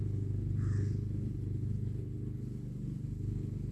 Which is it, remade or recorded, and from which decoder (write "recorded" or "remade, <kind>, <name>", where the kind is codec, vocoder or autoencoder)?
remade, codec, HILCodec